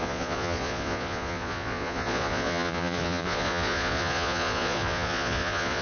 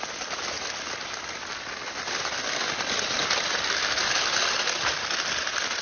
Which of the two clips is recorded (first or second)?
second